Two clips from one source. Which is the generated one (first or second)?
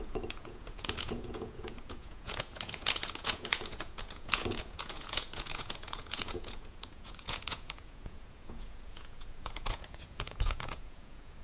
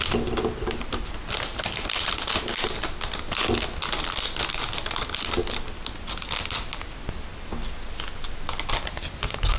first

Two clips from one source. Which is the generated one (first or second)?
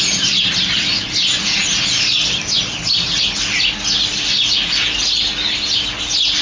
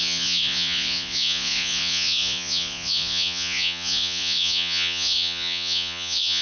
second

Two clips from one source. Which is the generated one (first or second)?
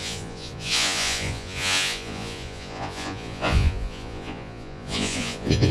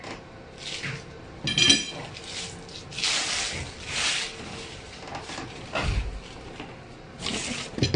first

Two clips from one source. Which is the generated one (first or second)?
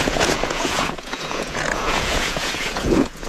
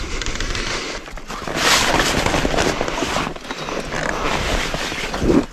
first